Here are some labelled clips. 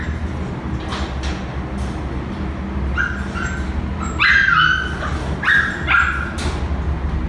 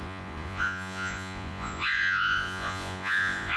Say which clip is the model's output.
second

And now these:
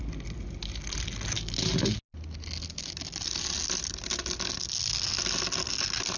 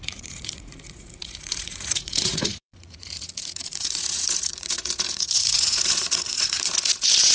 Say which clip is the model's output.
second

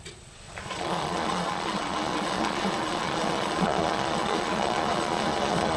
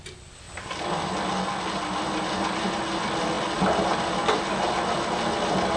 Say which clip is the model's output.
first